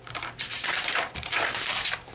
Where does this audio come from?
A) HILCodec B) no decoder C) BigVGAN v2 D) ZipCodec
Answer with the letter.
C